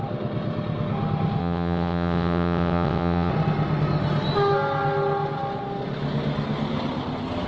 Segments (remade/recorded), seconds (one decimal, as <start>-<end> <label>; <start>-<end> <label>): 0.0-1.4 recorded; 1.4-3.3 remade; 3.3-7.5 recorded